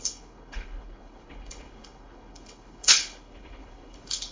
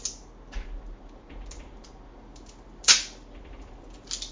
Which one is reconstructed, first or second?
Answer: first